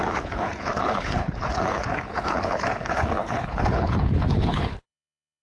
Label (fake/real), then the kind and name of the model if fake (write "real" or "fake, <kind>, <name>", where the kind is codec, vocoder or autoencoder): fake, codec, HILCodec